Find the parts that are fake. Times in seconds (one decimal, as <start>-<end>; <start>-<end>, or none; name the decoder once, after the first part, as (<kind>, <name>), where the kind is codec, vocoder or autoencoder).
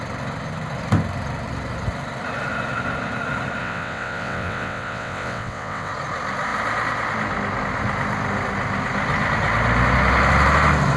3.6-5.9 (vocoder, WaveNeXt)